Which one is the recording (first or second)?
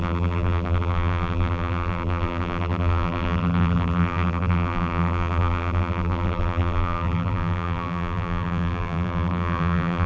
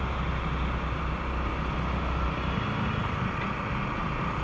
second